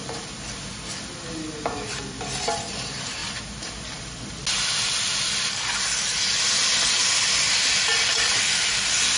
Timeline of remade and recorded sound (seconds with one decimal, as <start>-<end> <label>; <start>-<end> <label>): 0.0-9.2 recorded